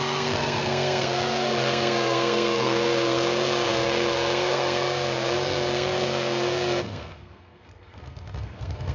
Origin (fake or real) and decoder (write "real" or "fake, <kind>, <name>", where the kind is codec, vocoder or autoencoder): fake, codec, SNAC